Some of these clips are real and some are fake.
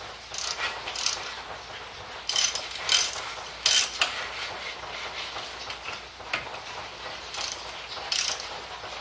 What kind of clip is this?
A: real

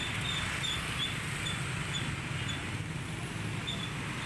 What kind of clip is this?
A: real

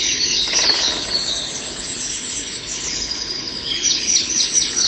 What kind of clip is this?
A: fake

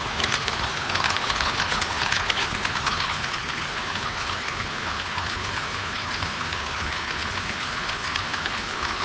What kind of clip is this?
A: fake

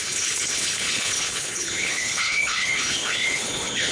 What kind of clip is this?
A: fake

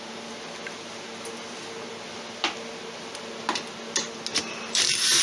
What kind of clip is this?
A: real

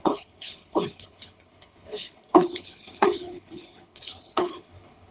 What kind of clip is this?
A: fake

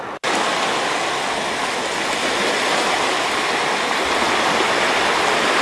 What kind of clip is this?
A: real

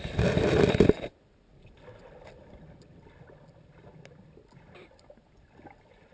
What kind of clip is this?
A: real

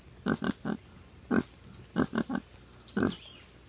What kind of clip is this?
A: real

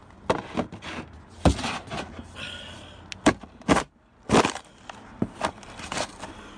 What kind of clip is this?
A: real